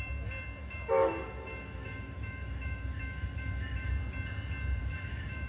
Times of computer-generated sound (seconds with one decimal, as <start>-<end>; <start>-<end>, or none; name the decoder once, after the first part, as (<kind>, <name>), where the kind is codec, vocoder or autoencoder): 0.6-3.9 (autoencoder, DAC-VAE); 4.8-5.5